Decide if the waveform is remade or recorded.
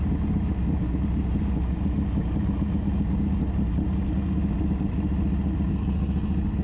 recorded